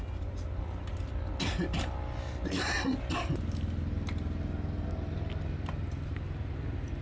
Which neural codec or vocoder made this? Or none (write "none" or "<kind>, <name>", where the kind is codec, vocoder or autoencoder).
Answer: none